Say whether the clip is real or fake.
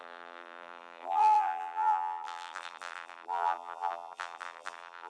fake